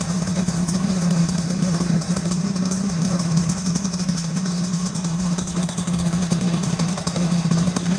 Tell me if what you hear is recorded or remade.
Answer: remade